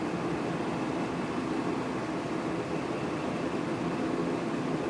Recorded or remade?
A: recorded